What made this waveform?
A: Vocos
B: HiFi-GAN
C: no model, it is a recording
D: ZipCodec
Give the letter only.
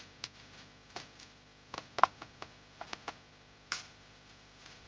C